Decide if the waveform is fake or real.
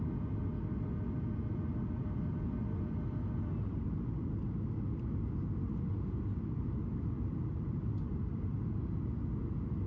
real